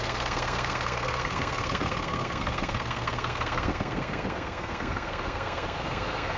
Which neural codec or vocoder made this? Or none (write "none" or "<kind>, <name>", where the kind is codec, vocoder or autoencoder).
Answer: codec, SNAC